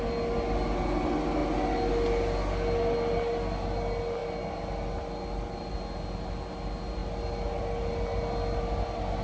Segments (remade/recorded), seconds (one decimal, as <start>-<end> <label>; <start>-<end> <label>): 0.0-9.2 recorded